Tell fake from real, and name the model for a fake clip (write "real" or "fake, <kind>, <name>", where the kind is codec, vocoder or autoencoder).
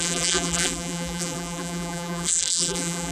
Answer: fake, vocoder, BigVGAN v2